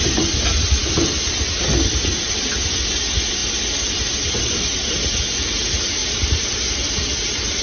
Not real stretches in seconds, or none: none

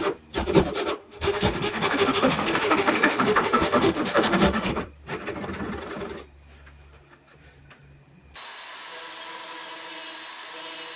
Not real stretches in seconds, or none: 1.0-4.7 (autoencoder, DAC-VAE)

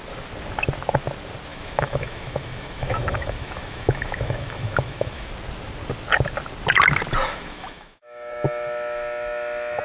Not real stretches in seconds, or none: 1.5-5.3 (autoencoder, DAC-VAE); 7.2-9.8

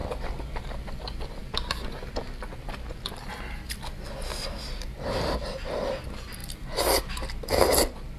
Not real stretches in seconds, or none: none

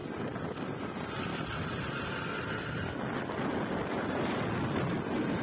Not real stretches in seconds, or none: none